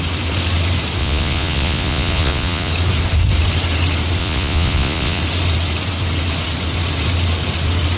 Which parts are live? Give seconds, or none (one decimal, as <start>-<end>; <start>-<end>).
0.0-1.0; 2.7-4.2; 5.2-8.0